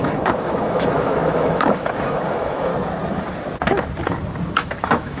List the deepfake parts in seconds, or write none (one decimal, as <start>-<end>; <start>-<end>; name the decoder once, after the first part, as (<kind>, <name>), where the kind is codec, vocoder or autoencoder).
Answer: 0.0-2.7 (autoencoder, DAC-VAE); 4.5-5.2